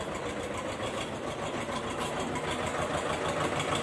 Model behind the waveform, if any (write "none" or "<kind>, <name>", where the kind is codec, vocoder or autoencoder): none